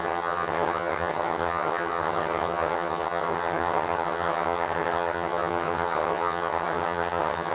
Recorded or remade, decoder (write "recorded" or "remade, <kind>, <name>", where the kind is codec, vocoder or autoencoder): remade, vocoder, HiFi-GAN